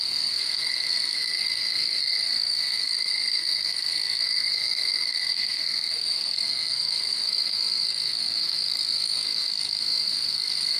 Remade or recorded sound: remade